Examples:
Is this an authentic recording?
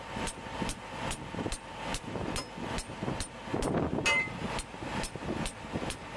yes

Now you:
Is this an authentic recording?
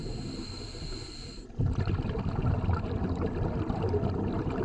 yes